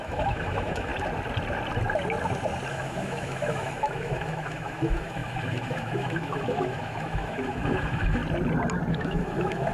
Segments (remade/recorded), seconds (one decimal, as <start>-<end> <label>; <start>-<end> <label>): 0.0-0.9 remade; 0.9-2.7 recorded; 2.7-8.2 remade; 8.2-8.9 recorded; 8.9-9.7 remade